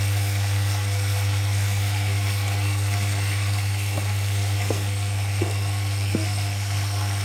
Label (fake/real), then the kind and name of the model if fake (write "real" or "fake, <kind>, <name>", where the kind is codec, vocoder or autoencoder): fake, codec, SNAC